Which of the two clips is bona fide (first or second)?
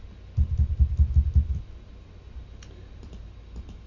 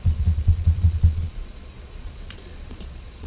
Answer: first